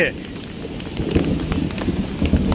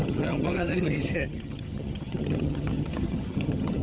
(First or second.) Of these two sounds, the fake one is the second